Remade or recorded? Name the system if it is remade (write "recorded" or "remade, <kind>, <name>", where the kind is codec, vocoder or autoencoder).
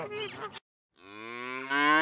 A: recorded